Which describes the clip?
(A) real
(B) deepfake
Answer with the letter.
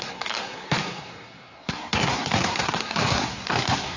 B